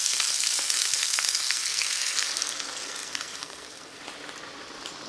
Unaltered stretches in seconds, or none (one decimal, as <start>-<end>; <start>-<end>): 4.0-5.1